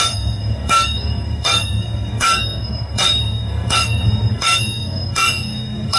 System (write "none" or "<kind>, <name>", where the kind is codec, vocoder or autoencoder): codec, SNAC